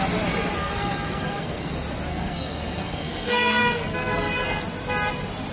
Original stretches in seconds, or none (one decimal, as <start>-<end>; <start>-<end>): 0.0-0.6; 1.7-2.1; 4.6-5.5